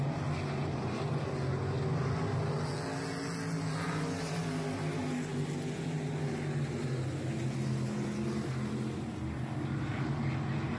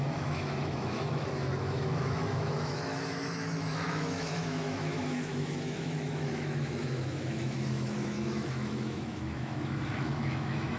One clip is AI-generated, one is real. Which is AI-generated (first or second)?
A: second